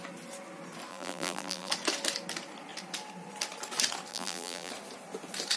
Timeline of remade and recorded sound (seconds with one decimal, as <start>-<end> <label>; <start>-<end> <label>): 0.0-0.9 recorded; 0.9-1.7 remade; 1.7-4.1 recorded; 4.1-4.7 remade; 4.7-5.6 recorded